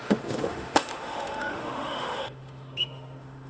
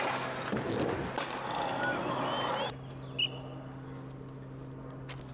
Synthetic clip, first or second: first